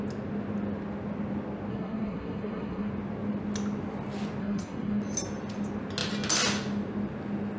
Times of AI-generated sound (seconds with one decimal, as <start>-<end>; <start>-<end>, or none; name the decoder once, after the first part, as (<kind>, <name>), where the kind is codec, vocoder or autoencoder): 1.7-2.9 (codec, SNAC); 4.4-5.0